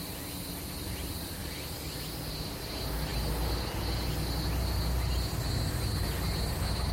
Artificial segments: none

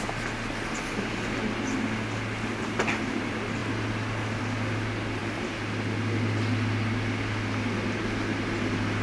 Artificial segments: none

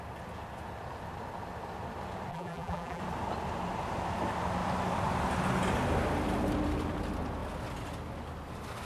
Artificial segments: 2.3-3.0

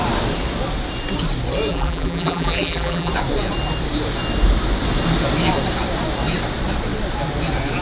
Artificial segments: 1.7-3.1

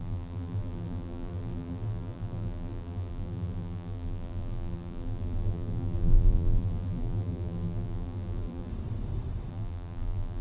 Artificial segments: 0.0-8.7; 9.5-10.4

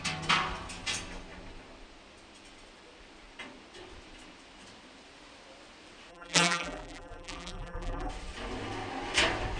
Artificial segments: 6.1-8.1

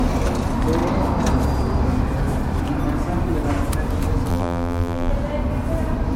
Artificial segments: 4.3-5.1

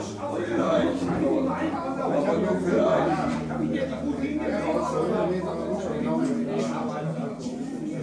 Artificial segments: 0.0-4.5; 7.2-8.0